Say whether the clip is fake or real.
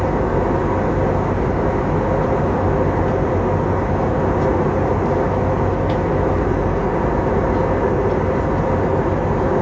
real